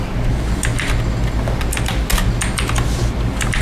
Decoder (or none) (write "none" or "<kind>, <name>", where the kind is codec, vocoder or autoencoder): none